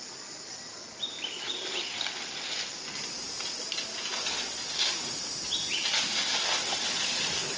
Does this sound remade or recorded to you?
recorded